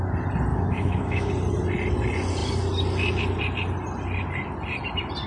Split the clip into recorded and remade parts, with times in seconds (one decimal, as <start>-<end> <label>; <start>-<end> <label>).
0.0-0.5 recorded; 0.5-1.3 remade; 1.3-5.3 recorded